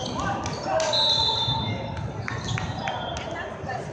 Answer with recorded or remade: recorded